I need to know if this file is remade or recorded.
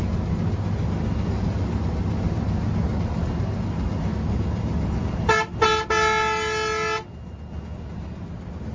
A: recorded